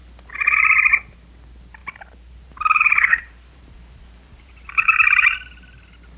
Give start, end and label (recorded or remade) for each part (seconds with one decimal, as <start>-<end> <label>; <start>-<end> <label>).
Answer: 0.0-1.8 recorded; 1.8-4.7 remade; 4.7-6.2 recorded